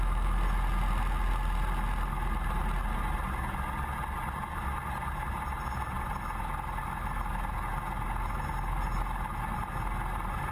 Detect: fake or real real